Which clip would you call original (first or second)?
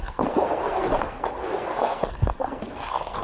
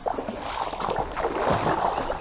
second